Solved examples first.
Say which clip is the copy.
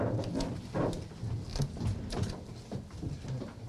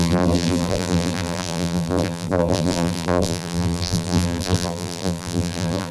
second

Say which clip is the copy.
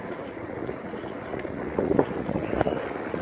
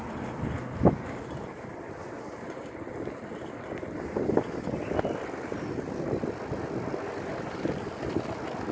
first